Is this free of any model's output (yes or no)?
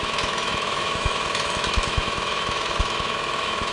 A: no